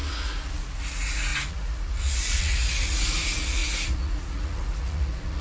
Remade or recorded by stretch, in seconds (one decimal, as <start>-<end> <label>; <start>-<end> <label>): 0.0-5.4 remade